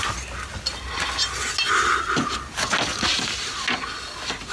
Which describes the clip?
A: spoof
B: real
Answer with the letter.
B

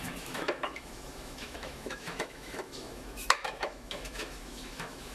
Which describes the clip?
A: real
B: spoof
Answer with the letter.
B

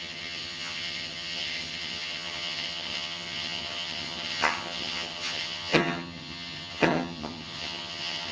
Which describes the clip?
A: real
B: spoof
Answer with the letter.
B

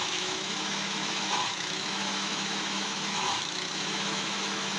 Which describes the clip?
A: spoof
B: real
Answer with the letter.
A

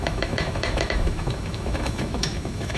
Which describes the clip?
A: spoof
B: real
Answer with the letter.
A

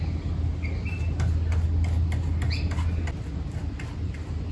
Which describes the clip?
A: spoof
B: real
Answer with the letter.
B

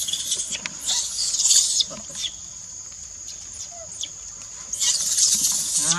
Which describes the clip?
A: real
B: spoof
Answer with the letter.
B